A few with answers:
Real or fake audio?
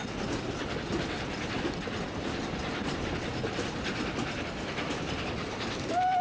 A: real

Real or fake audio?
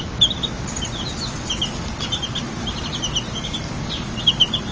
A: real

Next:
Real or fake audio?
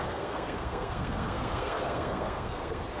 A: fake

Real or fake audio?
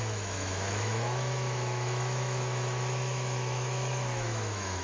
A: fake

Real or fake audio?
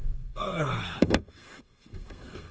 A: fake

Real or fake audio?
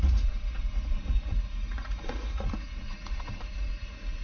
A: fake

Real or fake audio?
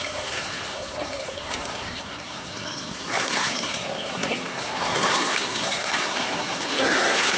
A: fake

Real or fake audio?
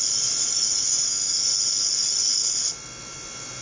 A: real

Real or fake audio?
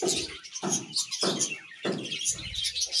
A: real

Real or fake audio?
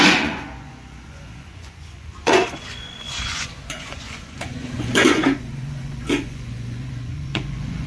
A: fake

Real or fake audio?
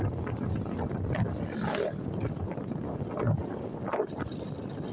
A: real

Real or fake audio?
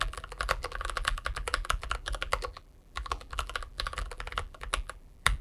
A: fake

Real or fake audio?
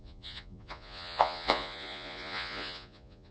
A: fake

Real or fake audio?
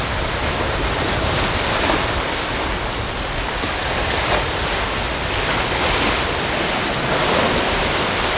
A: real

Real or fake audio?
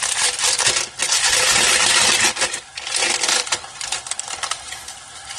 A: real